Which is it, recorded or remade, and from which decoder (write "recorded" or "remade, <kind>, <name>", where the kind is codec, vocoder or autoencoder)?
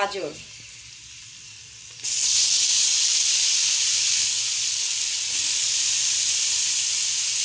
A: recorded